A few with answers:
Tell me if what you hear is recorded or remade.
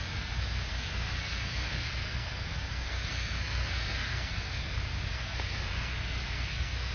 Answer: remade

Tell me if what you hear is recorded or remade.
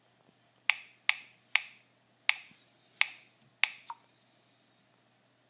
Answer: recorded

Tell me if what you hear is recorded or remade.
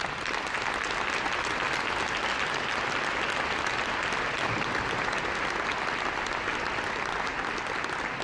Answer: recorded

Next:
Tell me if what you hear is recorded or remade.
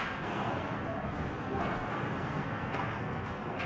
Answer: remade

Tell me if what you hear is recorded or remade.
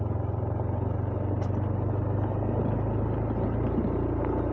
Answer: recorded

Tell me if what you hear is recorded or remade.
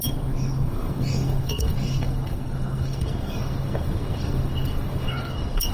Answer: remade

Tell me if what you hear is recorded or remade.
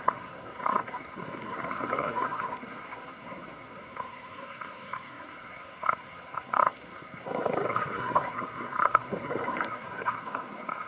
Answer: remade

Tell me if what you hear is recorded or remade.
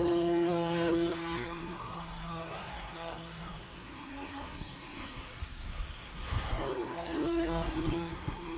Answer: remade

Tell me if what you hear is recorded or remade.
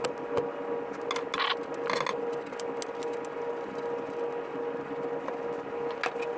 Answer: recorded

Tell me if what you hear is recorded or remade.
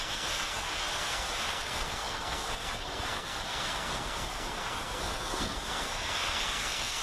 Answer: remade